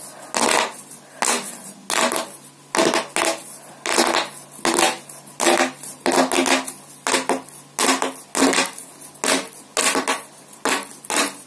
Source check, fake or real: real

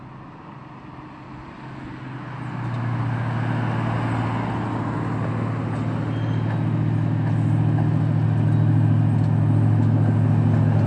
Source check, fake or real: real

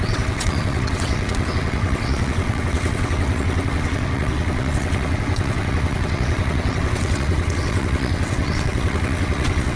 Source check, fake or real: fake